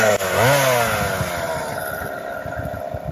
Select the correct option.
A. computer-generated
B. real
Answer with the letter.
B